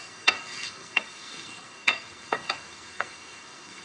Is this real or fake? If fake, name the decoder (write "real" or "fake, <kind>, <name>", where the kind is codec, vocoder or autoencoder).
fake, codec, SNAC